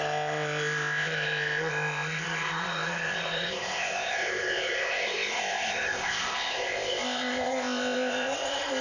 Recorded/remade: remade